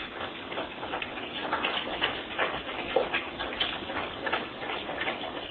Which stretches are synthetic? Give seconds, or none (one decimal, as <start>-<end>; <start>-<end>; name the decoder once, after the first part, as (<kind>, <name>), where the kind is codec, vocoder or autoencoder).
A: 0.0-5.5 (codec, DAC)